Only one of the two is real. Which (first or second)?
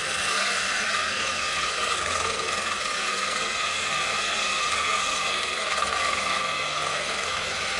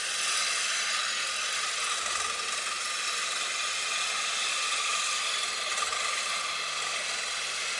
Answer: second